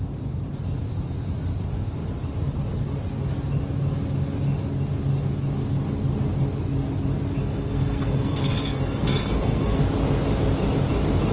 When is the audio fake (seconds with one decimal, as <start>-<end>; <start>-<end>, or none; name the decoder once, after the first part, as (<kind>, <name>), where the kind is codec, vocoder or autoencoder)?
7.4-9.8 (codec, SNAC)